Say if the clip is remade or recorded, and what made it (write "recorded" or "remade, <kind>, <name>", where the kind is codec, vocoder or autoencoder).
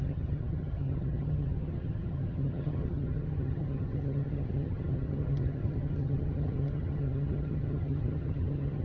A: remade, vocoder, HiFi-GAN